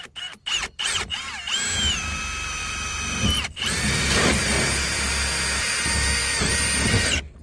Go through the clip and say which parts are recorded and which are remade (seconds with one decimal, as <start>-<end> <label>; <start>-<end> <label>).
0.0-2.6 recorded; 2.6-4.4 remade; 4.4-7.4 recorded